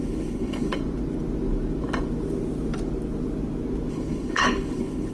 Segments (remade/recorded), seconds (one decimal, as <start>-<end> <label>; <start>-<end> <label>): 0.0-0.8 remade; 0.8-3.9 recorded; 3.9-5.1 remade